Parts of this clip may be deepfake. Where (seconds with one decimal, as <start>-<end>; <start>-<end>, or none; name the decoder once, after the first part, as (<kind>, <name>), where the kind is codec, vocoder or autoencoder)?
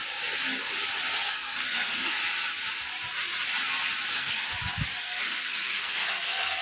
1.1-2.2 (codec, SNAC); 4.1-4.5; 5.0-6.6